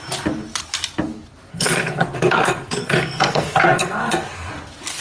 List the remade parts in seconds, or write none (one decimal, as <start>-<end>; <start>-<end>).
1.5-4.5